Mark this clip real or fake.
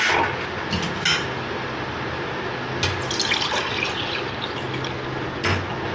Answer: real